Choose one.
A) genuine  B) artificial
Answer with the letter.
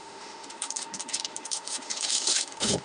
B